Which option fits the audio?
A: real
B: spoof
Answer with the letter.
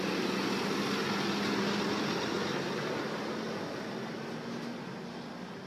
A